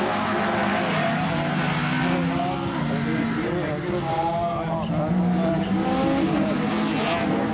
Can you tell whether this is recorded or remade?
recorded